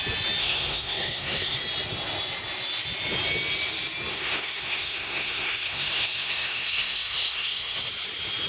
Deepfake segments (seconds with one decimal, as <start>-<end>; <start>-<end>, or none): 0.4-1.6; 4.1-7.9